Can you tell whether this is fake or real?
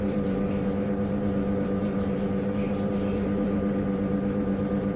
fake